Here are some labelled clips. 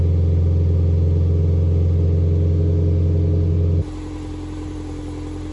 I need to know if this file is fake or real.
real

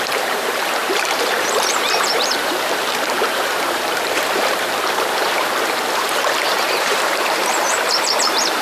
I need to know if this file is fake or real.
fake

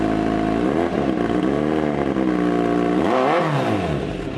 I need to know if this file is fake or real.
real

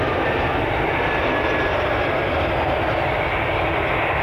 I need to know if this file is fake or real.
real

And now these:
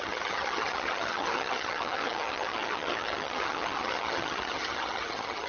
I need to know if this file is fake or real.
fake